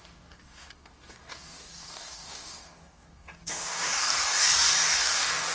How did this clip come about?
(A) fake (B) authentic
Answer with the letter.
A